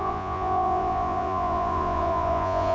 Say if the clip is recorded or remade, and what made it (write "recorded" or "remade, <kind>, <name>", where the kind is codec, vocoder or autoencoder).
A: remade, vocoder, Vocos